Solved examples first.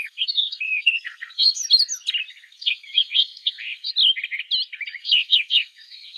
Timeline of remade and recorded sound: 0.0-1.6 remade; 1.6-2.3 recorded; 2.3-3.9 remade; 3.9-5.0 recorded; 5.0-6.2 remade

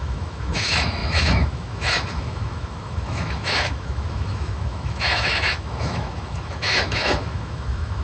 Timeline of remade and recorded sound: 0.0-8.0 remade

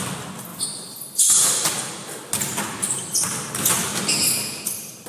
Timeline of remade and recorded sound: 0.0-5.1 recorded

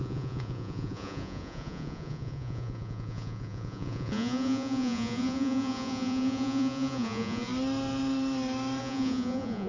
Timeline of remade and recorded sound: 0.0-7.5 remade; 7.5-8.8 recorded; 8.8-9.7 remade